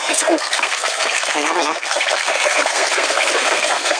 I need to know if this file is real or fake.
fake